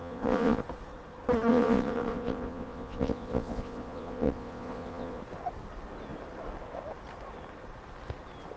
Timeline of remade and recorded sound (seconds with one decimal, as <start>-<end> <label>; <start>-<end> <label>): 0.0-0.6 remade; 0.6-1.5 recorded; 1.5-5.2 remade; 5.2-8.6 recorded